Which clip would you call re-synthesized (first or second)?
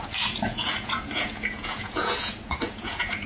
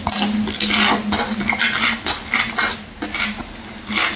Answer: first